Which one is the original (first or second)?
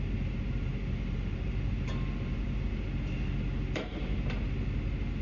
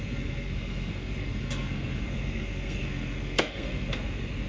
first